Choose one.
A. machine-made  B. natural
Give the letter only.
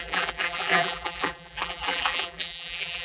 A